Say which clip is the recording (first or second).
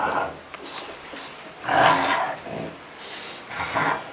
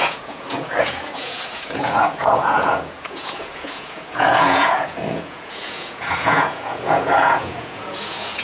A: first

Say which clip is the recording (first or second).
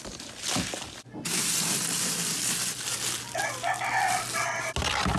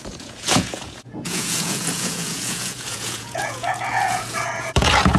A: first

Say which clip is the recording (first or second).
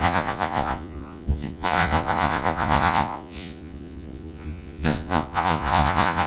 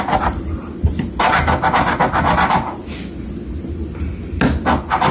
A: second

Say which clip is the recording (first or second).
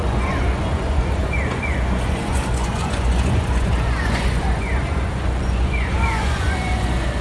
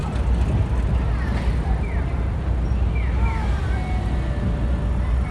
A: second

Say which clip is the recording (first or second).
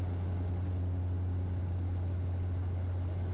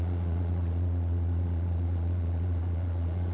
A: first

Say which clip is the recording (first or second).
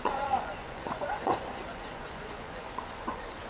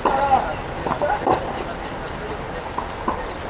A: second